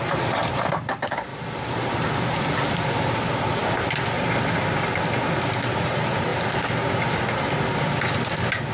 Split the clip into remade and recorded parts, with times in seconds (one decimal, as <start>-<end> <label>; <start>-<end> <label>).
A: 0.0-1.3 remade; 1.3-2.4 recorded; 2.4-3.6 remade; 3.6-4.1 recorded; 4.1-6.3 remade; 6.3-8.7 recorded